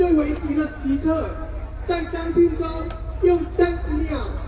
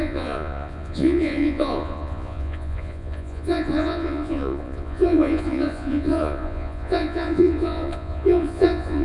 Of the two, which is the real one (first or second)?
first